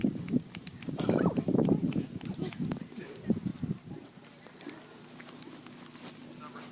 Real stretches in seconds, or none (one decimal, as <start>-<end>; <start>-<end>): 3.0-3.5; 4.5-6.7